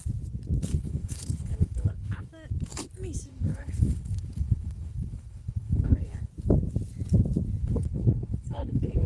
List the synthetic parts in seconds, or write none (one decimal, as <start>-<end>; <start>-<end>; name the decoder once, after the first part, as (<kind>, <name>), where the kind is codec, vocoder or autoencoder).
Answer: 0.7-2.3 (codec, HILCodec); 3.3-6.3; 7.6-9.1